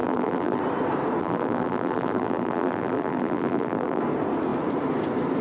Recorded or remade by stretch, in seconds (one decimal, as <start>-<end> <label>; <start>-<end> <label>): 0.0-0.6 remade; 0.6-1.2 recorded; 1.2-4.0 remade; 4.0-5.4 recorded